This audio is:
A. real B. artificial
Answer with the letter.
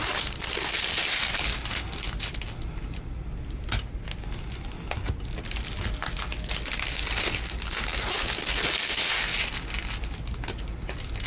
A